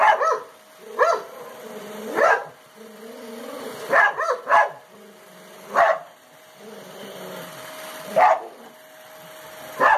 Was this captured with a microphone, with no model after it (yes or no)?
yes